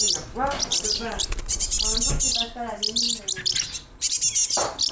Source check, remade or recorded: recorded